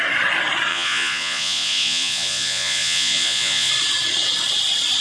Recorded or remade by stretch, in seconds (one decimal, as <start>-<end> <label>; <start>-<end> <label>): 0.0-0.7 recorded; 0.7-3.7 remade; 3.7-5.0 recorded